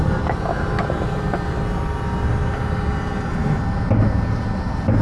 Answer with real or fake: real